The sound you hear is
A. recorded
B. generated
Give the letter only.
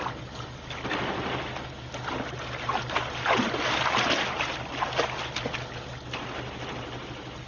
A